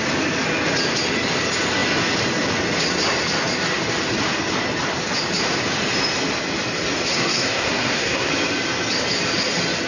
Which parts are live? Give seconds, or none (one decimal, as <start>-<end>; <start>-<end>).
0.0-7.1; 8.3-9.9